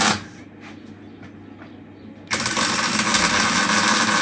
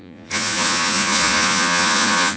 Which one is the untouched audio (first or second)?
first